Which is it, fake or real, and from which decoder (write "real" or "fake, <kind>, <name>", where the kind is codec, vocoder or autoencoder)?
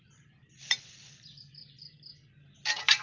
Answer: real